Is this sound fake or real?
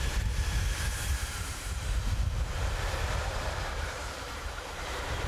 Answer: fake